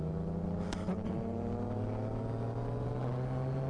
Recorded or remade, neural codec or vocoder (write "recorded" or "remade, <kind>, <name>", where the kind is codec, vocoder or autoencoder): recorded